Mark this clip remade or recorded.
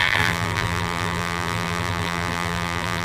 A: remade